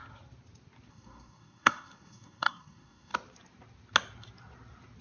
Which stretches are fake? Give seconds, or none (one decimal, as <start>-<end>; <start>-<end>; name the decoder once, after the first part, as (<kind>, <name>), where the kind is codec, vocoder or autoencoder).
0.9-3.1 (codec, SNAC)

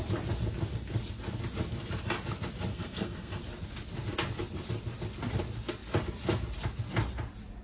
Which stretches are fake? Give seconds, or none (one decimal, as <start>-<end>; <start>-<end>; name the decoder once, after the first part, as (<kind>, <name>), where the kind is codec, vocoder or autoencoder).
2.7-3.4 (codec, SNAC)

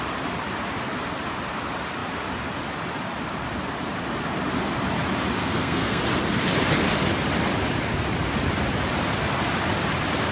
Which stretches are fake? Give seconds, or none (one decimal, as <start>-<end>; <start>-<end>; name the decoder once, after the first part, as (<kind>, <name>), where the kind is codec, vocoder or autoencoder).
5.4-6.0 (codec, SNAC)

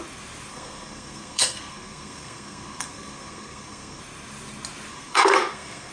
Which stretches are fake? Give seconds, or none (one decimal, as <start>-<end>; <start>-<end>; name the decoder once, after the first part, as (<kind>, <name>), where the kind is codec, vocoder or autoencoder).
0.5-4.0 (codec, SNAC); 4.9-5.9

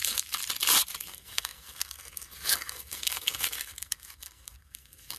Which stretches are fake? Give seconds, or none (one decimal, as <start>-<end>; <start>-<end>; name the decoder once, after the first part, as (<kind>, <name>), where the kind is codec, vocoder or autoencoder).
0.0-0.4 (codec, SNAC); 1.0-5.2